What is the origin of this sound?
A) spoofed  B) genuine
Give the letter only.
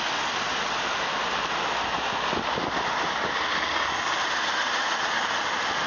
B